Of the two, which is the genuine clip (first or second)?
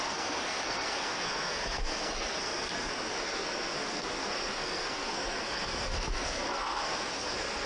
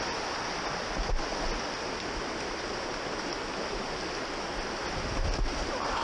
second